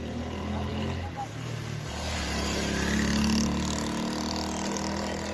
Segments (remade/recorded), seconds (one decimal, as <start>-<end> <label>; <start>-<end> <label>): 0.0-5.3 recorded